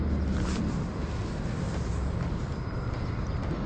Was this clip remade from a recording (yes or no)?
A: no